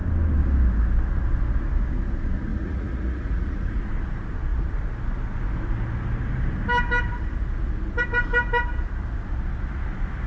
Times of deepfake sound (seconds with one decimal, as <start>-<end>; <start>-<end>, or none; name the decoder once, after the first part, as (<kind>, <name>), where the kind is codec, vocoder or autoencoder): 2.5-3.8 (vocoder, Vocos)